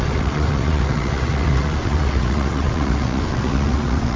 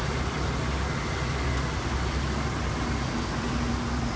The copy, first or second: first